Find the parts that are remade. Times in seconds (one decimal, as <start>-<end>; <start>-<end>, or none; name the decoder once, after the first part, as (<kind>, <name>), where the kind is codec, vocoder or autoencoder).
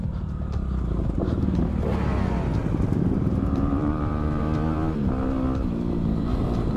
2.6-4.4 (vocoder, BigVGAN v2)